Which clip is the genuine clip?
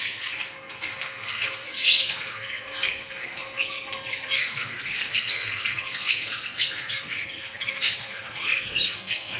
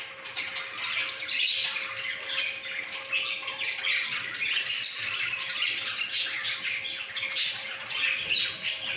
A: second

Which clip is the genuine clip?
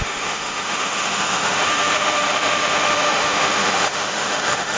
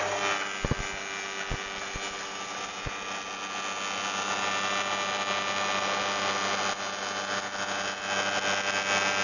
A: second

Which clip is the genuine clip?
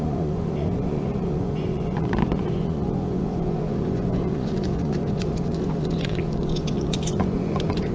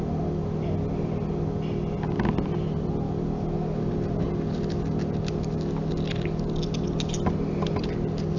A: second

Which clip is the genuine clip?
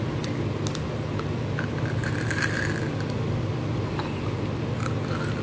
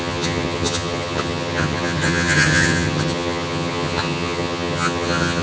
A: first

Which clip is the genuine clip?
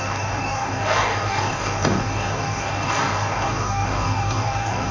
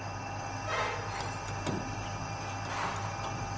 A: second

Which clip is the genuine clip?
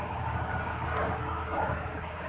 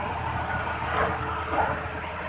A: second